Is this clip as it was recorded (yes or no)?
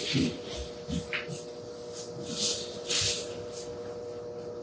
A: yes